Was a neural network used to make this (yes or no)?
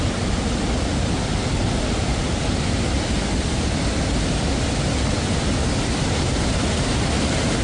no